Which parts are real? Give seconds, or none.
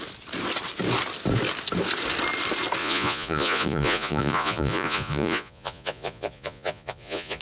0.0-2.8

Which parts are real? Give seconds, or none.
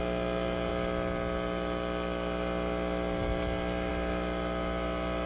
0.0-5.3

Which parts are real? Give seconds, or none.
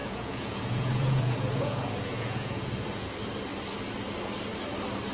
3.1-5.1